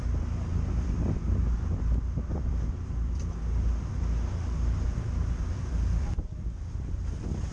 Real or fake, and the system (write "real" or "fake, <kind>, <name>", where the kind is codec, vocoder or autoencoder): fake, vocoder, BigVGAN v2